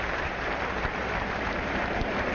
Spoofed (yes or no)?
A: yes